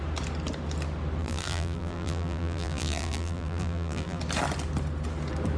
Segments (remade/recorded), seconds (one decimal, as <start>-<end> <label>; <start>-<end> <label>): 0.0-1.2 recorded; 1.2-4.2 remade; 4.2-5.6 recorded